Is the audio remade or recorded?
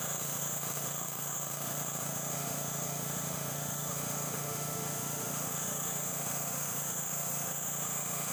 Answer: remade